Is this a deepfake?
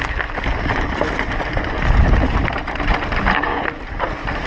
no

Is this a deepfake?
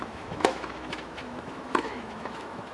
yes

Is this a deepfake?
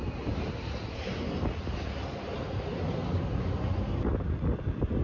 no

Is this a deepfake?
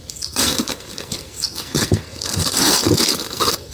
yes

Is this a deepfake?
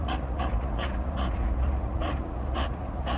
yes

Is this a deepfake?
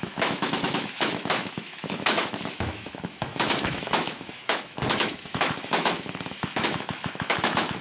yes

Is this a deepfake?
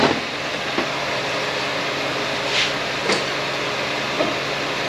no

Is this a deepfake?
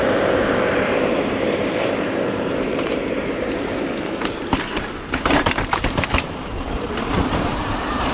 yes